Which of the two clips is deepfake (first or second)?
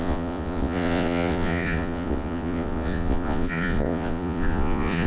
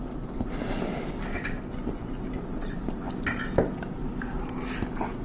first